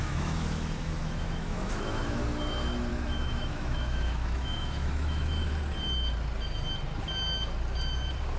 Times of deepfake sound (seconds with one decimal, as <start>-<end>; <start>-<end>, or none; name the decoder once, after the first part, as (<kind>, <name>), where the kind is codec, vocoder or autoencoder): 0.0-2.2 (autoencoder, DAC-VAE); 2.9-5.5